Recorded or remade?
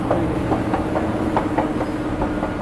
recorded